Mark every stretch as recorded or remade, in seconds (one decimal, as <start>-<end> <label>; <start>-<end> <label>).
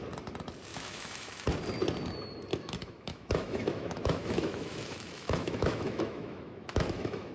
0.0-0.7 recorded; 0.7-1.5 remade; 1.5-2.5 recorded; 2.5-7.3 remade